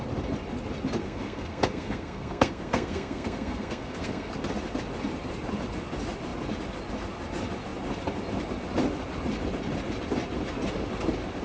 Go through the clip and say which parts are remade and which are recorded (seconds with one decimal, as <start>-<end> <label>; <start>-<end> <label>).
0.0-1.0 recorded; 1.0-4.3 remade; 4.3-11.4 recorded